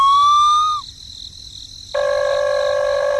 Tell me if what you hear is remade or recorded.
recorded